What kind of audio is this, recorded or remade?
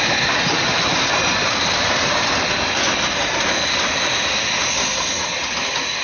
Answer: recorded